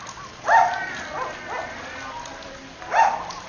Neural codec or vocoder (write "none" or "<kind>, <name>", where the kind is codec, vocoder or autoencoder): none